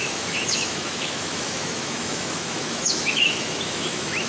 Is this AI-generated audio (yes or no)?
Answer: yes